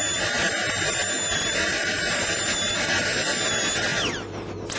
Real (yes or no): yes